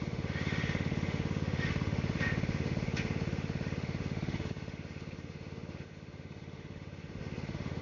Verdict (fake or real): fake